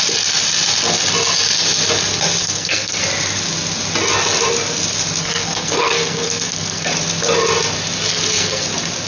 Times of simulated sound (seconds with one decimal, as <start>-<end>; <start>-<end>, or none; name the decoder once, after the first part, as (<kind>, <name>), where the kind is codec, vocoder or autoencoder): 2.4-3.0 (codec, SNAC); 5.2-6.9; 8.1-8.6

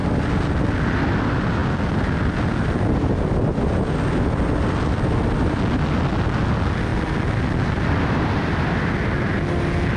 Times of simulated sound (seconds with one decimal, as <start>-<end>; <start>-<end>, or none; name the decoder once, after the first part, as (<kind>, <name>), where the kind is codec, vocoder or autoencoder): none

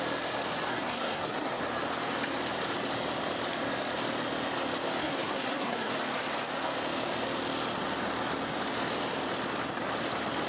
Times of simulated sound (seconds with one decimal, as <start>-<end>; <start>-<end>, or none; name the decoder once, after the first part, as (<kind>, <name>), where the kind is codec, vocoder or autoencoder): 0.7-1.6 (codec, SNAC); 5.0-5.9

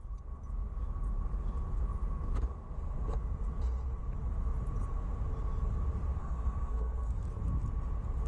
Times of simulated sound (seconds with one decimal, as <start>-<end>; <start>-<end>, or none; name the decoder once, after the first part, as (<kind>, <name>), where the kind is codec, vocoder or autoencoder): 6.2-7.2 (codec, SNAC)